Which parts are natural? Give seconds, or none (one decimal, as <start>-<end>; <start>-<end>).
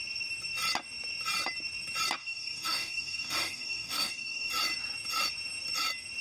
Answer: 0.0-2.2; 4.5-6.2